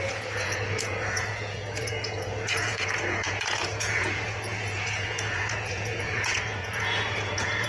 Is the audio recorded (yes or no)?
no